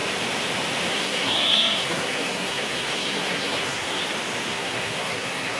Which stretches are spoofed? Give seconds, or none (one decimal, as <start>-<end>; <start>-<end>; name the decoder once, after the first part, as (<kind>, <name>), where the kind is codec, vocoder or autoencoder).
0.9-4.0 (codec, SNAC); 4.5-5.6